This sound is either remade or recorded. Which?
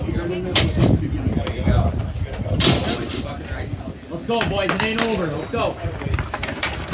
recorded